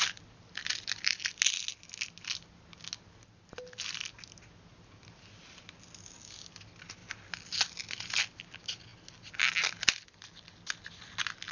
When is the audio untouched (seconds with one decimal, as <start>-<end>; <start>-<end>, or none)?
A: 0.0-11.5